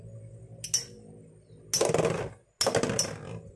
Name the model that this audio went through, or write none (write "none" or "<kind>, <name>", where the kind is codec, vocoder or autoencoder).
none